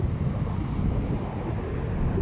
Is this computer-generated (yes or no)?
no